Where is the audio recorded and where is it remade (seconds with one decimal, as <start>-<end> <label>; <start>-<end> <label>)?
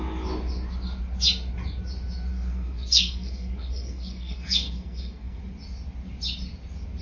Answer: 0.0-2.3 recorded; 2.3-5.4 remade; 5.4-7.0 recorded